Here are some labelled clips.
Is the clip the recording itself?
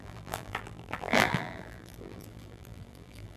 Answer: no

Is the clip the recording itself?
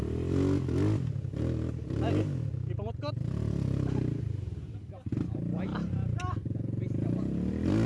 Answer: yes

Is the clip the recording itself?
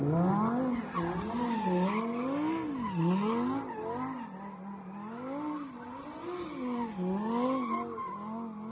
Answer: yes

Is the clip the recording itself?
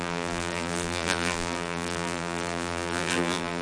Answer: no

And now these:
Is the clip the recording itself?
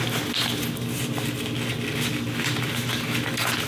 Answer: yes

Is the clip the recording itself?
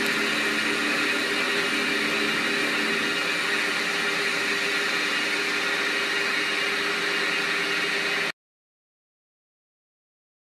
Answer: yes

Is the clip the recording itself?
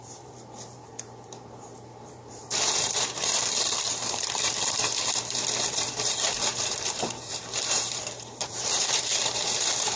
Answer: no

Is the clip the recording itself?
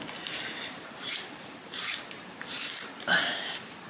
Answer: no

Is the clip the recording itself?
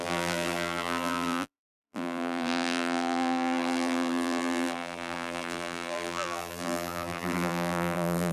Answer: no